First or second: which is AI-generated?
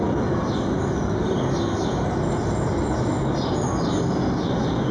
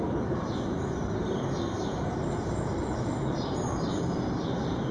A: second